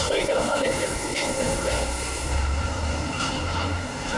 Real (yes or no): no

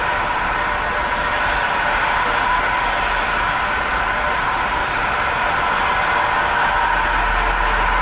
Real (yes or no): yes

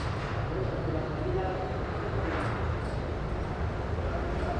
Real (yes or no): yes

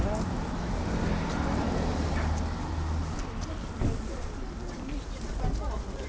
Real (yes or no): yes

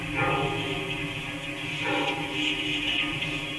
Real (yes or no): yes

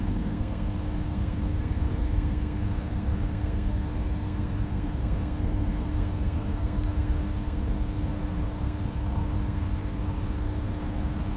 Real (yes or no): no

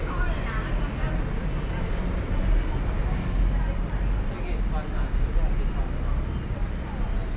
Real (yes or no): yes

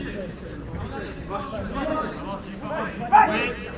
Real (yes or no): yes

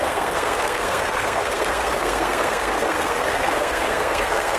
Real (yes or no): no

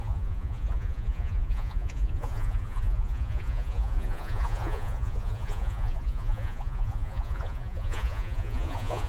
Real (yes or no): no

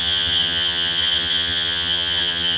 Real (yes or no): no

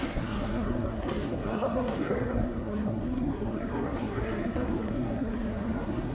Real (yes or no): no